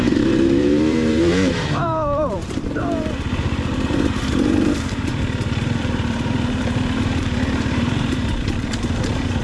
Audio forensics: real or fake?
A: fake